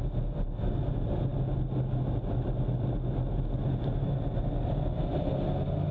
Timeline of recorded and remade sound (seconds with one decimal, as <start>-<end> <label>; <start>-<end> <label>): 0.0-5.9 recorded